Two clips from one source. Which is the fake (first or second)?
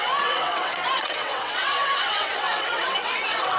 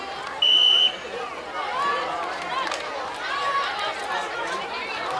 first